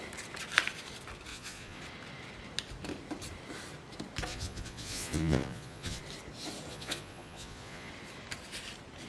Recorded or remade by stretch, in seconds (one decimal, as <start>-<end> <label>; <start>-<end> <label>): 0.0-1.3 recorded; 1.3-1.8 remade; 1.8-4.3 recorded; 4.3-6.0 remade; 6.0-6.7 recorded; 6.7-7.9 remade; 7.9-9.1 recorded